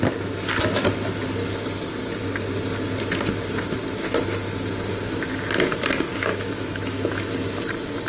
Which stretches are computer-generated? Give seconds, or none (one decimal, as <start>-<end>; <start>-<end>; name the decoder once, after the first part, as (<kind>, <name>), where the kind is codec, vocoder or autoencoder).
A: 6.3-7.3 (autoencoder, DAC-VAE)